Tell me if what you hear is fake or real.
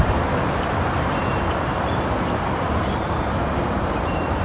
fake